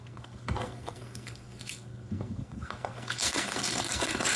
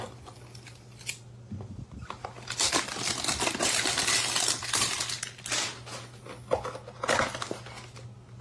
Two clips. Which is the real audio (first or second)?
second